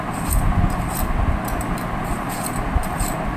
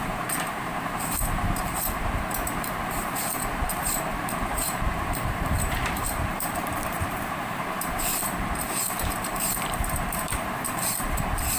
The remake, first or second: second